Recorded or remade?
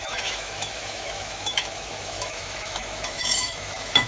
remade